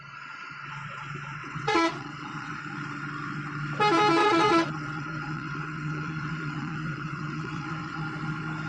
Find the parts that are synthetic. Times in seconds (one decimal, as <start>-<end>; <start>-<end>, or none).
1.4-2.6; 4.2-8.0